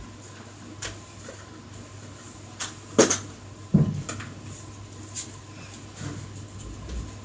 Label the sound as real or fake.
real